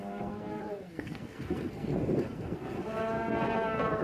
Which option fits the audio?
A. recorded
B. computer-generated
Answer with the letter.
B